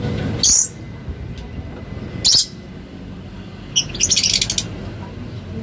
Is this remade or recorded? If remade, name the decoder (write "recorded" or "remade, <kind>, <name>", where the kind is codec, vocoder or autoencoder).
recorded